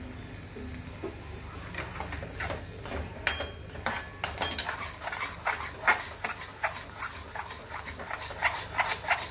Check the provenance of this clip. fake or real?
real